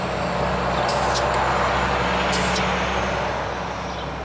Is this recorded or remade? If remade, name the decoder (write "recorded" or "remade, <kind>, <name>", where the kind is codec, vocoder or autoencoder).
recorded